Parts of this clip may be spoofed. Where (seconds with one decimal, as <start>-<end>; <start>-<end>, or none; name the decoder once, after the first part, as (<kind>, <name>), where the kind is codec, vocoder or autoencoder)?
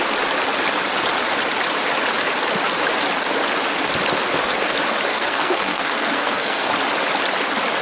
5.1-6.7 (codec, SNAC)